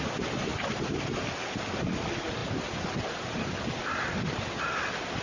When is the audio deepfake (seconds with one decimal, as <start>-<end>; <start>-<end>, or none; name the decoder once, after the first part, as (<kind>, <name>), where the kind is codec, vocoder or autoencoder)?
none